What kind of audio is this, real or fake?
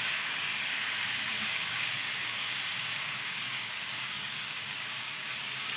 fake